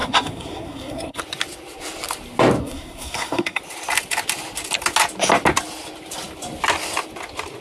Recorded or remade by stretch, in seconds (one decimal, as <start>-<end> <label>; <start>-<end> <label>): 0.0-1.2 remade; 1.2-2.6 recorded; 2.6-3.6 remade; 3.6-7.6 recorded